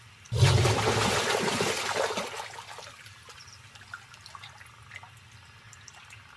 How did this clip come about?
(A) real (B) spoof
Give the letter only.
B